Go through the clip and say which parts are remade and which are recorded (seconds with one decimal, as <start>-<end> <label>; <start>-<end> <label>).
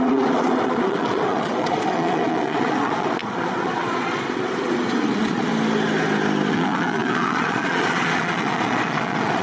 0.0-5.5 remade; 5.5-6.5 recorded; 6.5-9.4 remade